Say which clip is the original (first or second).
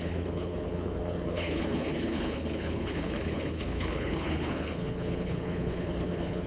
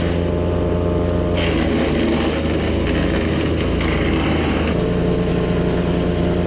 second